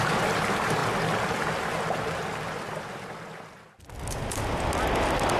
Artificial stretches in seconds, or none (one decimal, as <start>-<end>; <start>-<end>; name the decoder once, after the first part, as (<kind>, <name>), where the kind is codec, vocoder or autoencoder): none